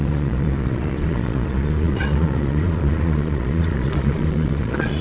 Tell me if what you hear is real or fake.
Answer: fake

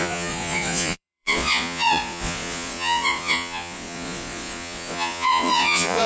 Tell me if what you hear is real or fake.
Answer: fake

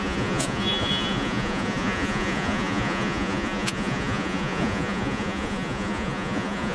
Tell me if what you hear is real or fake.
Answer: fake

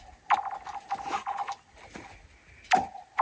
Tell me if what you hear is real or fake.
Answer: real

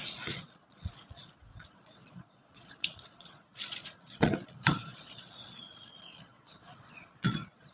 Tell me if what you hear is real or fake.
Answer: fake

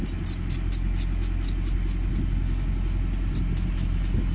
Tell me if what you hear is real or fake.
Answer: real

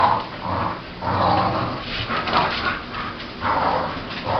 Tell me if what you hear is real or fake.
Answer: real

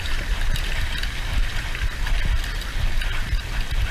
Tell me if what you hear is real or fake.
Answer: real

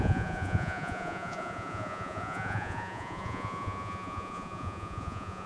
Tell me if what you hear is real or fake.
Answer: fake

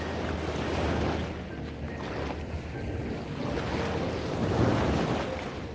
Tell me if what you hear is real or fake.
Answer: real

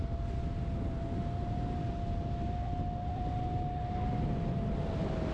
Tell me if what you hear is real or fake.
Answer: real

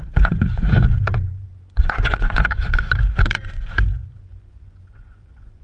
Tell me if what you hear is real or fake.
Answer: fake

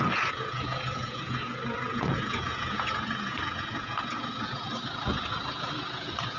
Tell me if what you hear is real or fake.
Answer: fake